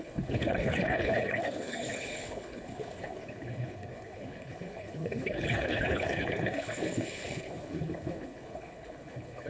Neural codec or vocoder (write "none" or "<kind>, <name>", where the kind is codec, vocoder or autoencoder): codec, HILCodec